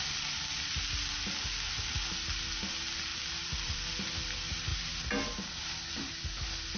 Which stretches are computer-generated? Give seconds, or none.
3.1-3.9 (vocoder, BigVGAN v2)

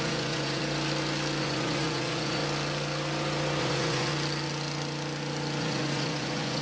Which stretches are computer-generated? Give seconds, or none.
0.0-0.6 (vocoder, Vocos); 1.4-2.4; 3.6-4.1; 5.6-6.6